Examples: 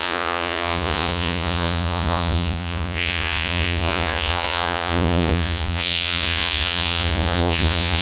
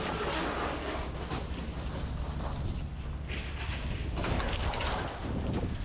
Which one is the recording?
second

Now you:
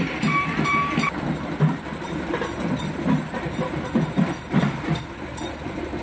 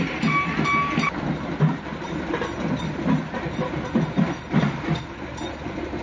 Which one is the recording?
second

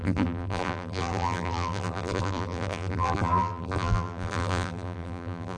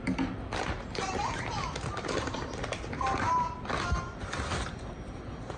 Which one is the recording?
second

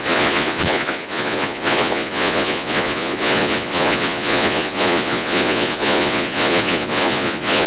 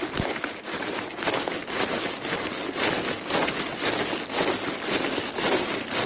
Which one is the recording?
second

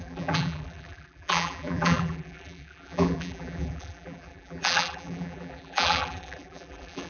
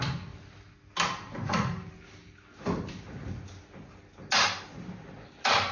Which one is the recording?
second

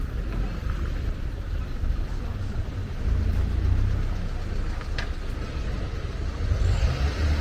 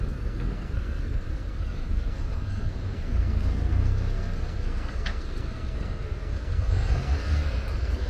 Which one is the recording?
first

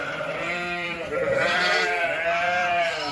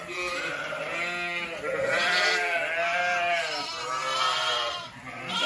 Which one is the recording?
second